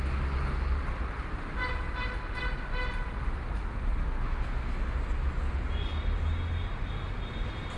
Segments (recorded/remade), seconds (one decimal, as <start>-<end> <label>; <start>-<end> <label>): 0.0-3.9 recorded; 3.9-4.4 remade; 4.4-7.8 recorded